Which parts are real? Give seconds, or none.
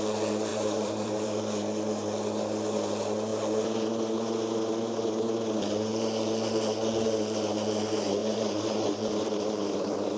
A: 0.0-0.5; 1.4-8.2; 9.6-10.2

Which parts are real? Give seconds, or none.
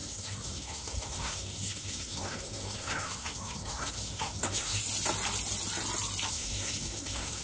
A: 4.8-6.3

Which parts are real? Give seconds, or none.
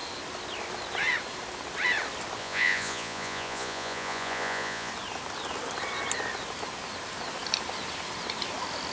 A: 0.0-2.4; 4.9-8.9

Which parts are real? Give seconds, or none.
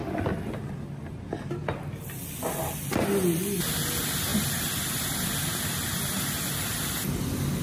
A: 0.0-4.3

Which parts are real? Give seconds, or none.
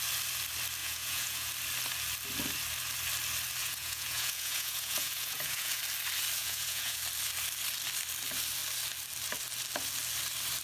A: 0.0-0.8; 1.5-3.6; 5.8-6.4; 7.0-10.6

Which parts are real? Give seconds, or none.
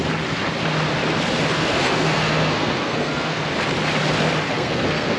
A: 0.0-1.5; 3.4-4.5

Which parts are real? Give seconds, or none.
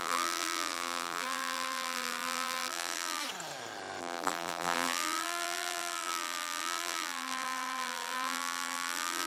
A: 3.2-4.0